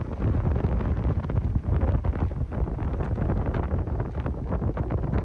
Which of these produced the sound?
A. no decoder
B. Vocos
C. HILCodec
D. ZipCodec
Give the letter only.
A